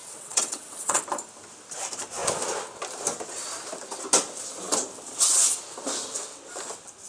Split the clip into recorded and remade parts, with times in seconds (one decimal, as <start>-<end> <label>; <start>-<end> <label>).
0.0-1.0 remade; 1.0-7.1 recorded